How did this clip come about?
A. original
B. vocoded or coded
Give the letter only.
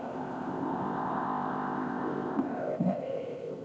B